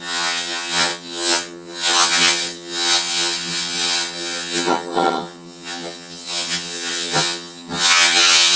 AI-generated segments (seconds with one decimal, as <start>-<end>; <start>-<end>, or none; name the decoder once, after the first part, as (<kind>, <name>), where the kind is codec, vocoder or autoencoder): 0.0-8.6 (vocoder, HiFi-GAN)